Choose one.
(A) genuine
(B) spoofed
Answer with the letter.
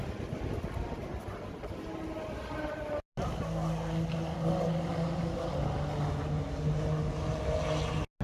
A